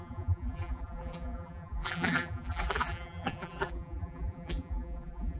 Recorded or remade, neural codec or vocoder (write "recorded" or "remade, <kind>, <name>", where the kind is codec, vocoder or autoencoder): remade, vocoder, BigVGAN v2